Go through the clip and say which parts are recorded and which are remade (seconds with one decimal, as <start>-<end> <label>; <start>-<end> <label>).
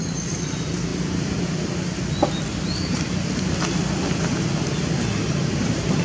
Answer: 0.0-6.0 recorded